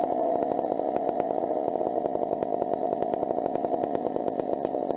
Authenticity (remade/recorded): remade